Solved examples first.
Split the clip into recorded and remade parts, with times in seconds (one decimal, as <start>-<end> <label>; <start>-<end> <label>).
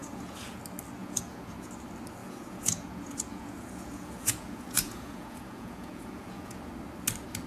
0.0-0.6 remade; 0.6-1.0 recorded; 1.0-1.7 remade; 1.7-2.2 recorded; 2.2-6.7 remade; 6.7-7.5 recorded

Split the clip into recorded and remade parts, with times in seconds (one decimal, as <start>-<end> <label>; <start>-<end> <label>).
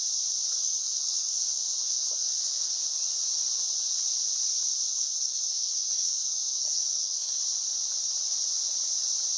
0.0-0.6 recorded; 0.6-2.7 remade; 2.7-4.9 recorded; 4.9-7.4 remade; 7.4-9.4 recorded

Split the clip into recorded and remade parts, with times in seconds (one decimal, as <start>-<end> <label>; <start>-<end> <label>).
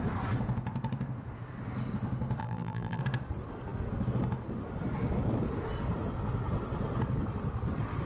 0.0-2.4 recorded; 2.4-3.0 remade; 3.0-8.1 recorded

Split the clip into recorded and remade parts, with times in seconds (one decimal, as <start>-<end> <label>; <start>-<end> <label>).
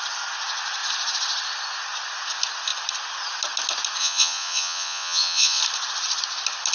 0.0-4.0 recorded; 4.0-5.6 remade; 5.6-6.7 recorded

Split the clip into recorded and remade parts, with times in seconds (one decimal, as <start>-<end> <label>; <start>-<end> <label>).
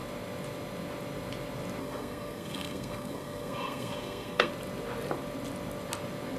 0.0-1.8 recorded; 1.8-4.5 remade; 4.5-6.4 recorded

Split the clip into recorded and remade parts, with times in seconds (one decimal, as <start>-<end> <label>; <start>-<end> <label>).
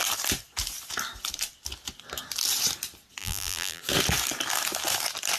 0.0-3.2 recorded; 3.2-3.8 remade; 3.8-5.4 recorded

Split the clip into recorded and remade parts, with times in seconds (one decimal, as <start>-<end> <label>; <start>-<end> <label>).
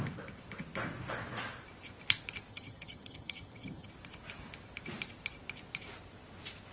0.0-2.5 recorded; 2.5-3.9 remade; 3.9-6.7 recorded